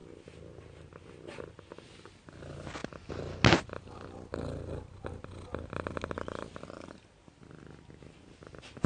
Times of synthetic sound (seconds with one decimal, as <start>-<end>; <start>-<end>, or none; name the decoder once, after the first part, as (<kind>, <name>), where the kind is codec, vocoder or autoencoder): none